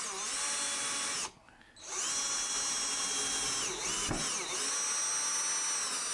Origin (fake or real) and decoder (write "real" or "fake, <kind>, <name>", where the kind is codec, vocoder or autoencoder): real